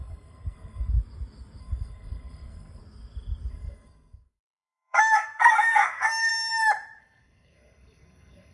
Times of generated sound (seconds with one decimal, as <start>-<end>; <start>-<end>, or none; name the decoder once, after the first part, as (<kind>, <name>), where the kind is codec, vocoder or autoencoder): 0.0-0.9 (codec, SNAC); 1.6-2.8; 3.5-6.3; 7.0-8.5